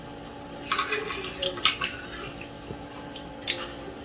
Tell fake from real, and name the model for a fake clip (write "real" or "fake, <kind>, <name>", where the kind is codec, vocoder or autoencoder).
real